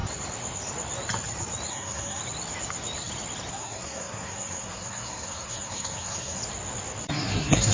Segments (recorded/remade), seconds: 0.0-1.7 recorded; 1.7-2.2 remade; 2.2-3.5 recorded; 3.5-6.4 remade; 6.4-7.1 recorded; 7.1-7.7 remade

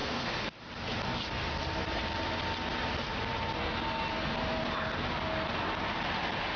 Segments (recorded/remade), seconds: 0.0-0.5 remade; 0.5-6.6 recorded

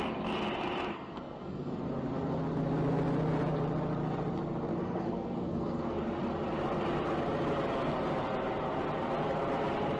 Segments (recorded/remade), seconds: 0.0-0.9 recorded; 0.9-1.8 remade; 1.8-4.7 recorded; 4.7-6.0 remade; 6.0-10.0 recorded

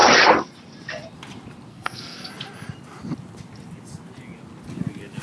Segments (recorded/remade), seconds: 0.0-1.7 recorded; 1.7-2.3 remade; 2.3-5.2 recorded

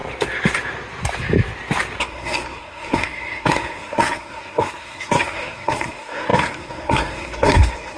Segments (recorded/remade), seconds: 0.0-2.0 recorded; 2.0-8.0 remade